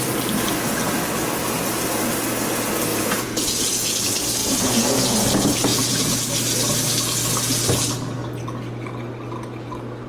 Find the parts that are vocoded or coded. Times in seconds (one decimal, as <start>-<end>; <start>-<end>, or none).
2.9-4.0; 4.4-5.3; 5.7-6.3